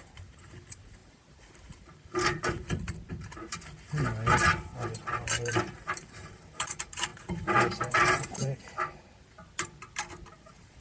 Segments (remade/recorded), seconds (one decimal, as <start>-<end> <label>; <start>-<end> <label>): 0.0-9.1 remade; 9.1-10.3 recorded; 10.3-10.8 remade